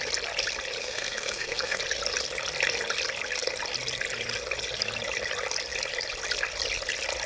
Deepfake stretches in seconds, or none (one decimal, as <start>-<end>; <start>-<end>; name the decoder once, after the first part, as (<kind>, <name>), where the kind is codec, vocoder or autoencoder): 0.8-1.8 (codec, SNAC)